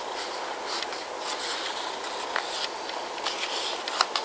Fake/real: real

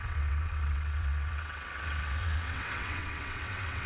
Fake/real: fake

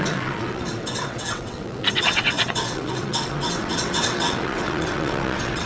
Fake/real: fake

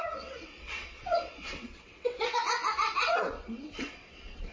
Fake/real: fake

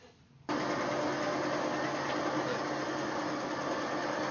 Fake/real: real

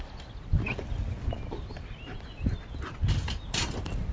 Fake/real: real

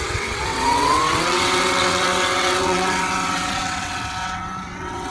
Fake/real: fake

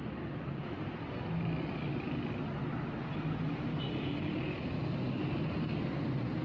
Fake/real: real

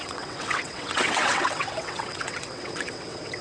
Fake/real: fake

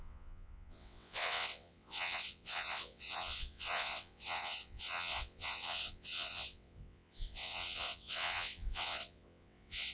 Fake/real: fake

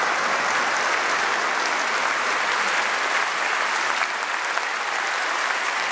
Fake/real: real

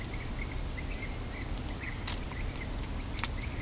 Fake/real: real